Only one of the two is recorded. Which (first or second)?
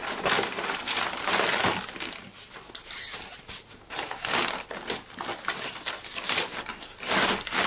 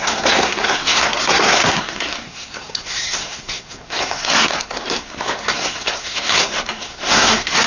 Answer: first